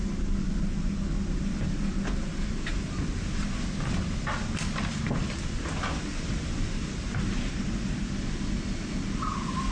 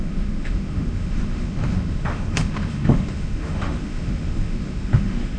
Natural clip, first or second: first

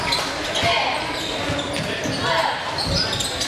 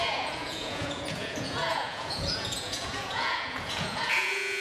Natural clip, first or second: first